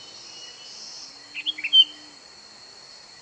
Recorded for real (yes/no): yes